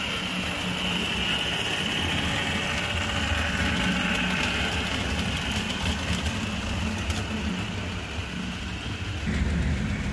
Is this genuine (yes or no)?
yes